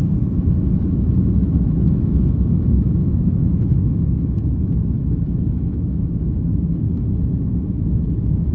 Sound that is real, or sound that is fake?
fake